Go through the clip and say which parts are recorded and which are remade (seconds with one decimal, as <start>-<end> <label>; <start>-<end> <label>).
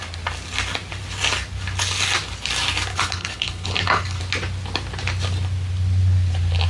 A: 0.0-2.9 recorded; 2.9-4.2 remade; 4.2-6.7 recorded